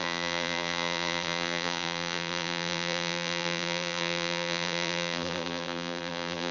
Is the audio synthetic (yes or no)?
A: yes